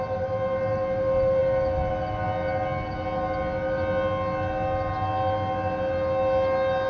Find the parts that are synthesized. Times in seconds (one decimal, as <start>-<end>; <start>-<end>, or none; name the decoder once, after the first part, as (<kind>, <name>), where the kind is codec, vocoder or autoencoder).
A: none